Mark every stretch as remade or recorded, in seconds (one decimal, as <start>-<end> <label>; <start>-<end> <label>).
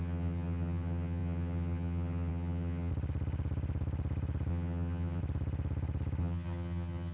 0.0-2.9 remade; 2.9-4.5 recorded; 4.5-5.2 remade; 5.2-6.2 recorded; 6.2-7.1 remade